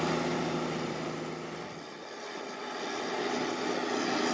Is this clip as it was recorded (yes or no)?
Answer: yes